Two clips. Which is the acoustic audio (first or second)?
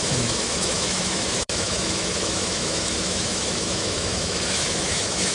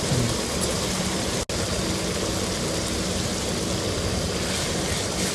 second